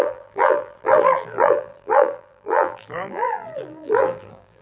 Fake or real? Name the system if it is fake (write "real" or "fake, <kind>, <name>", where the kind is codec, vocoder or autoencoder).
fake, vocoder, BigVGAN v2